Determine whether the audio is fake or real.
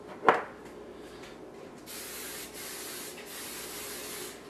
real